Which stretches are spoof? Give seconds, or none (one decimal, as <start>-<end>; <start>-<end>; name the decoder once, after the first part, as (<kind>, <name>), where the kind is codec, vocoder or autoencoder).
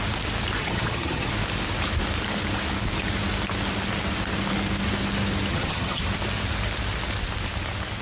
0.6-1.3 (vocoder, HiFi-GAN); 5.5-6.0